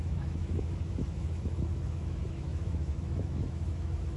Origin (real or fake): fake